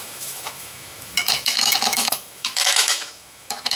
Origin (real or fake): fake